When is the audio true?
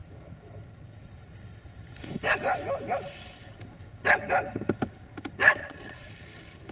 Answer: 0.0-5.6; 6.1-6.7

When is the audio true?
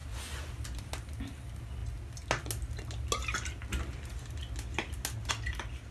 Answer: 0.0-5.9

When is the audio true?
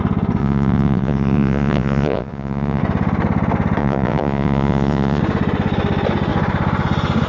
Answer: 0.0-0.4; 2.8-3.8; 5.2-7.3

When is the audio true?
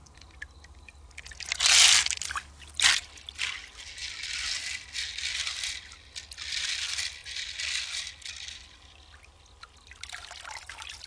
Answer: 0.0-11.1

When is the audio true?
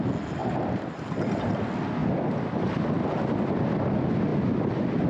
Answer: 0.0-0.4; 0.9-2.0; 3.1-4.3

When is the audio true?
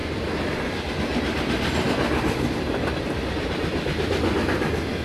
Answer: 0.0-5.0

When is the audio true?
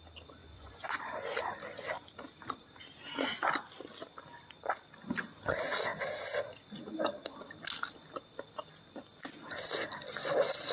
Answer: 0.0-0.4; 1.0-10.7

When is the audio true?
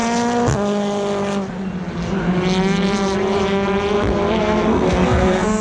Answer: 0.0-4.4